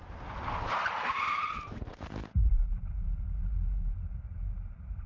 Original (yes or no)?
no